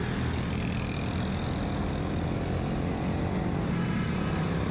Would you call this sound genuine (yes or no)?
yes